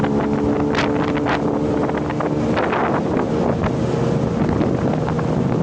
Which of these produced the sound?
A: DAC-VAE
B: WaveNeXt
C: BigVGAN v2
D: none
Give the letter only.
D